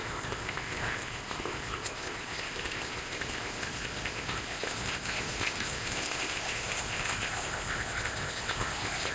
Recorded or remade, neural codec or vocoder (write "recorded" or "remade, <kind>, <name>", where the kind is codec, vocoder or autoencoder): remade, codec, ZipCodec